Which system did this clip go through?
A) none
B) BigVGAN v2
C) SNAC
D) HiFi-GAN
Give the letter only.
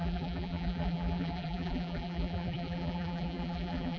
B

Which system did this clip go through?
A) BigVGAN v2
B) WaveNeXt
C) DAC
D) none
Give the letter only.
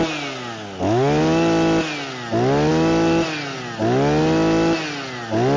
D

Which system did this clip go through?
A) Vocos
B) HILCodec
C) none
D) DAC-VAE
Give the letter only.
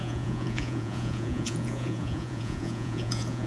A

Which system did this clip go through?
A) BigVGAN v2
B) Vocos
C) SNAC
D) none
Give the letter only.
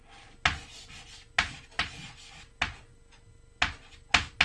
D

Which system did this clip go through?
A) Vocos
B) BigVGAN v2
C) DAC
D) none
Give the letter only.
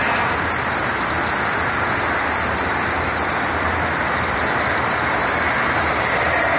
D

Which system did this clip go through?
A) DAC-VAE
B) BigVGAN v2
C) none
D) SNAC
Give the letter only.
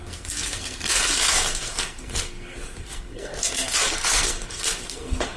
D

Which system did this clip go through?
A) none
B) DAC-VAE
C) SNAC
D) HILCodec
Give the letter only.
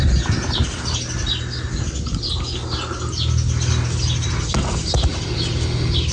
A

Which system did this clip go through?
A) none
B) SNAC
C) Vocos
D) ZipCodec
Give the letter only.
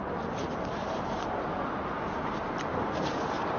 A